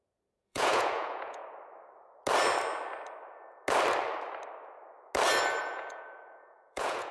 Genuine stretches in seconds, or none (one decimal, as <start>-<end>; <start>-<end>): 1.4-5.6